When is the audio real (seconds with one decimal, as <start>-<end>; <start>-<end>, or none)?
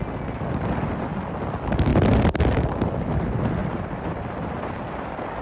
0.0-1.9; 2.4-3.6; 4.9-5.4